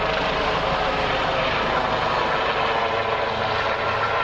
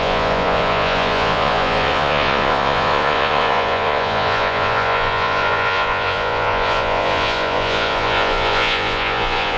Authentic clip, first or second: first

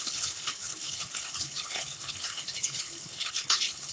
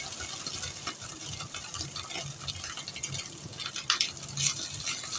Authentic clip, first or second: second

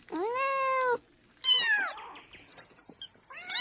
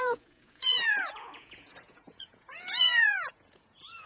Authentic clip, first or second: first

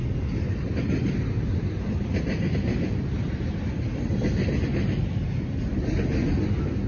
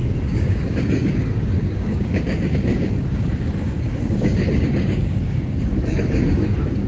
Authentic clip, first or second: first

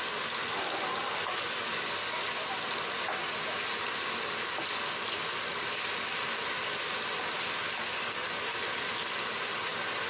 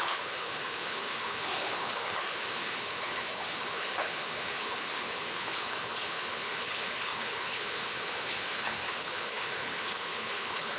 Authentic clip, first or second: first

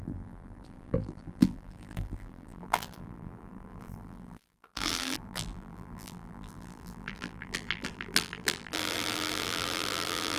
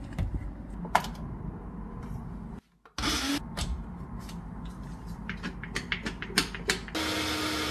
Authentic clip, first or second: second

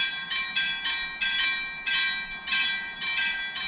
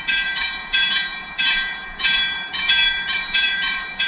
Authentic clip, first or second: first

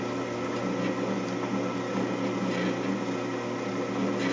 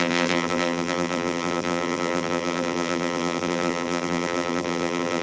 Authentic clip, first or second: first